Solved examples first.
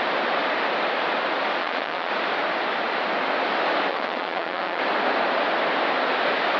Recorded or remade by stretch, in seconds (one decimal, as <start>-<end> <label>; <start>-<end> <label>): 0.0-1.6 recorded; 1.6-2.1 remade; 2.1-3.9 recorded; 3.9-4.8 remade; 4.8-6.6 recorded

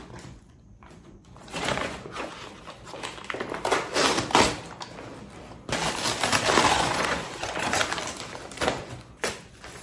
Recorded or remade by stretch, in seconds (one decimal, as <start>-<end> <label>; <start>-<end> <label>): 0.0-2.3 remade; 2.3-6.7 recorded; 6.7-7.8 remade; 7.8-8.8 recorded; 8.8-9.8 remade

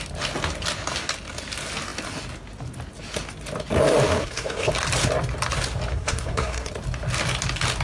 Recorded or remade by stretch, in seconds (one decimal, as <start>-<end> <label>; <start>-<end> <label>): 0.0-4.2 recorded; 4.2-4.7 remade; 4.7-5.9 recorded; 5.9-6.7 remade; 6.7-7.8 recorded

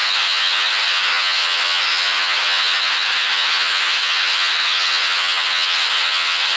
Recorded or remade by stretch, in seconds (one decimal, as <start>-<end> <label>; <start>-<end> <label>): 0.0-6.6 remade